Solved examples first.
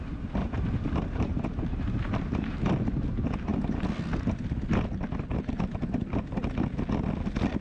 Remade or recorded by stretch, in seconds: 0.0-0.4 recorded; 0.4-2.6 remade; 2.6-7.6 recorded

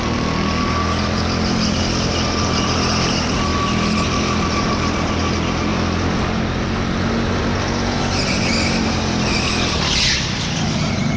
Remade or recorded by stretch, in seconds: 0.0-11.2 recorded

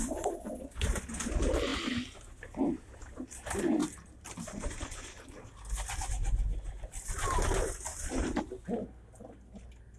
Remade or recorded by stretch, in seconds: 0.0-7.9 recorded; 7.9-8.4 remade; 8.4-10.0 recorded

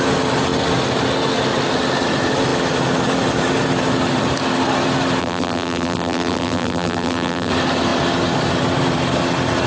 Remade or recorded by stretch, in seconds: 0.0-5.2 recorded; 5.2-7.5 remade; 7.5-9.7 recorded